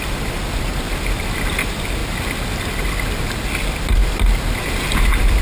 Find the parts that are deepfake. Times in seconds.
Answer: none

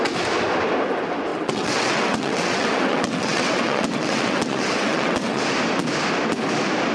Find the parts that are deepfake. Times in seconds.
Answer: 1.3-5.4 (vocoder, WaveNeXt)

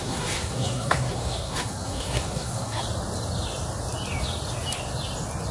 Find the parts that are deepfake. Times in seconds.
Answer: 0.0-2.8 (codec, SNAC)

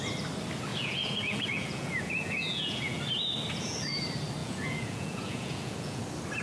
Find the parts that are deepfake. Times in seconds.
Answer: 0.7-3.0 (vocoder, Vocos); 4.4-6.0

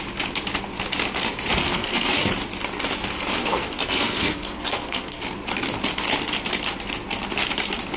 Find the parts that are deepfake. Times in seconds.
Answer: 1.6-2.3 (codec, SNAC); 3.4-5.2

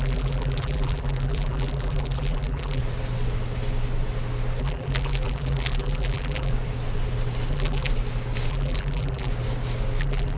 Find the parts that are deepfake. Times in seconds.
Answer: 0.0-2.8 (vocoder, BigVGAN v2); 4.6-6.5; 7.5-7.9; 8.5-9.3; 10.0-10.4